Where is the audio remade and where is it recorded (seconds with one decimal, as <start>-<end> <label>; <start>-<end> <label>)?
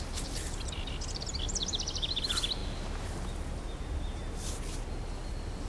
0.0-4.2 remade; 4.2-5.3 recorded; 5.3-5.7 remade